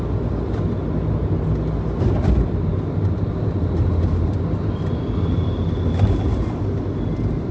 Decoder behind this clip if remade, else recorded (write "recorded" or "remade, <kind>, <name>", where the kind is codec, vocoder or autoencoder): recorded